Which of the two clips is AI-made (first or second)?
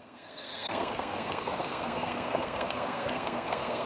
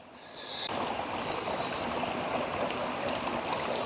first